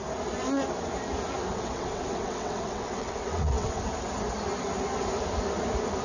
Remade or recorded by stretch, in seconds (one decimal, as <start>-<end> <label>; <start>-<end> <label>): 0.0-1.5 recorded; 1.5-3.8 remade; 3.8-6.0 recorded